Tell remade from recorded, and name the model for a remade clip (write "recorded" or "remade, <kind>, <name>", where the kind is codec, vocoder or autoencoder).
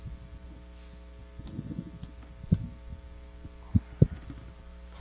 recorded